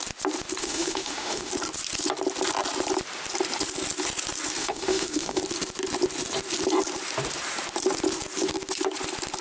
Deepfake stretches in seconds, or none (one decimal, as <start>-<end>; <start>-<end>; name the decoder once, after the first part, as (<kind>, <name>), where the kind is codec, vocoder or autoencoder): 0.6-1.5 (autoencoder, DAC-VAE); 4.6-5.4